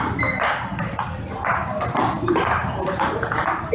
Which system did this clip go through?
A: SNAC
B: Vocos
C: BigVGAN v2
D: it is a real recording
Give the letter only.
D